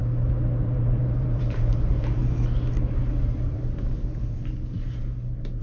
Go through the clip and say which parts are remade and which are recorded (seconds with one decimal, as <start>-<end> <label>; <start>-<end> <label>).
0.0-0.6 recorded; 0.6-2.2 remade; 2.2-5.6 recorded